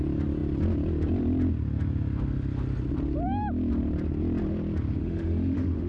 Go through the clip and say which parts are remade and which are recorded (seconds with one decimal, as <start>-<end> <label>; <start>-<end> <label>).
0.0-5.0 recorded; 5.0-5.9 remade